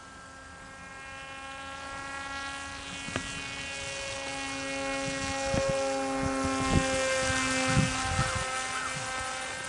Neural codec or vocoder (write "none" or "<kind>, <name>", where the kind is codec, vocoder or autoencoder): none